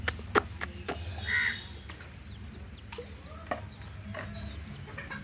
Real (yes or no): yes